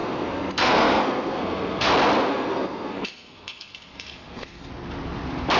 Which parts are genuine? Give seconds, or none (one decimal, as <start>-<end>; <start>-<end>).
1.9-2.3; 4.7-5.6